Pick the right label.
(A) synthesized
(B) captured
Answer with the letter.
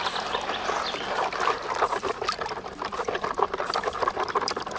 B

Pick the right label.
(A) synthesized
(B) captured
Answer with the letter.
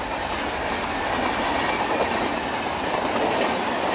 B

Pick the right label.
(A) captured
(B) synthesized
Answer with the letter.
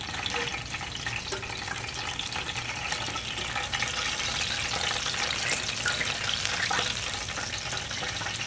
A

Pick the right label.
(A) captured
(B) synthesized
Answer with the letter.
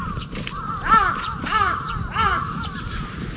B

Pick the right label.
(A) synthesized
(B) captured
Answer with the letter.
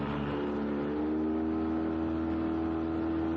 B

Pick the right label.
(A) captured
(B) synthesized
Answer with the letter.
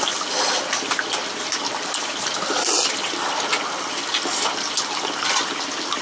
A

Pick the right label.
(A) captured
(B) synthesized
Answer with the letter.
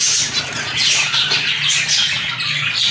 A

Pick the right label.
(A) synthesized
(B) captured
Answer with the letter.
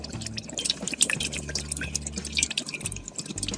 A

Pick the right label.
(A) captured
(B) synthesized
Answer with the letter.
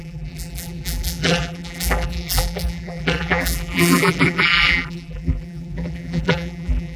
B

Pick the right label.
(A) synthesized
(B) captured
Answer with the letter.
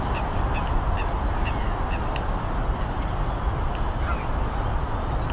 B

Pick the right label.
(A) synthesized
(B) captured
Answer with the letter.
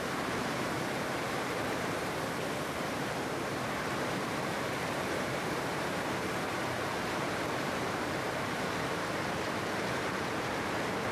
A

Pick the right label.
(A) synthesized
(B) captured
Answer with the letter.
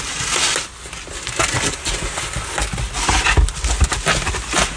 B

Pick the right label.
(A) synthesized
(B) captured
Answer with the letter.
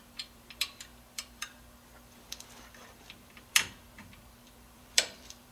A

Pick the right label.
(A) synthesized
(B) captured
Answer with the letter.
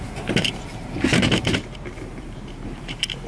A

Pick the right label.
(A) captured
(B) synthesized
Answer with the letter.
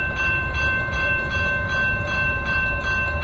B